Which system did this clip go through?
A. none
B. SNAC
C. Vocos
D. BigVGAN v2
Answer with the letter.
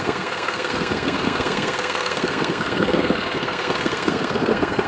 B